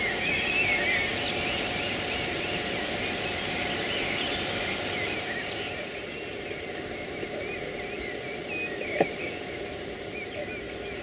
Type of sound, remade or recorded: recorded